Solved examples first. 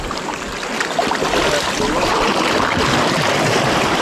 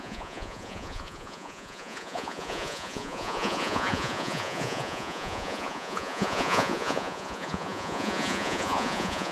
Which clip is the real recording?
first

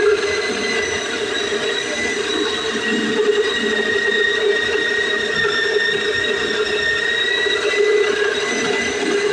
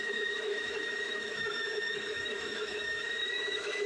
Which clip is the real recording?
first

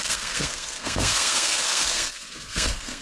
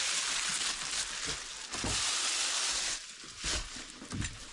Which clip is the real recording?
second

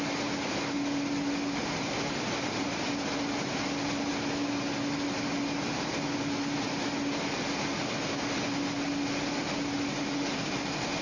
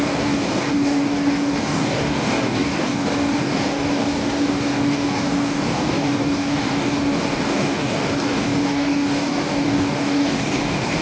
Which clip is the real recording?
first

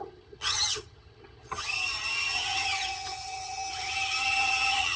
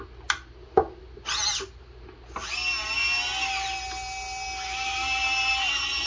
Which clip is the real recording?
second